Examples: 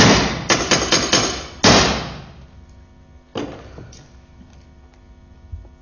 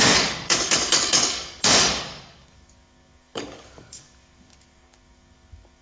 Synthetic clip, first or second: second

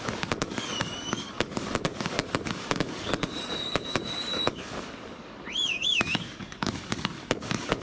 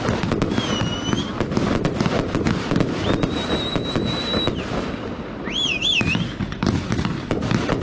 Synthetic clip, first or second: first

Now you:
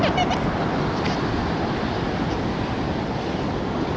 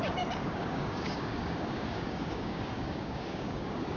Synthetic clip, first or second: second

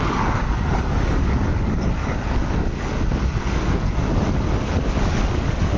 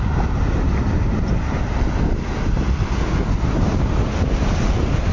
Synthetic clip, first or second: first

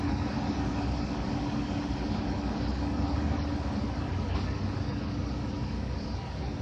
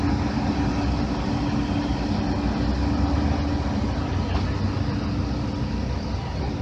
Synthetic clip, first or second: first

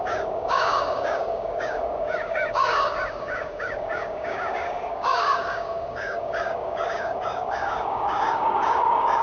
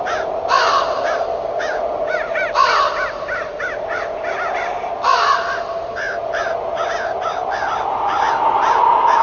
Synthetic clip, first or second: first